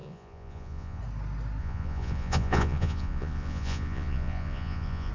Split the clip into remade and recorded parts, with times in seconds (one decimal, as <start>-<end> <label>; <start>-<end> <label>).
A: 0.0-1.0 remade; 1.0-1.6 recorded; 1.6-5.1 remade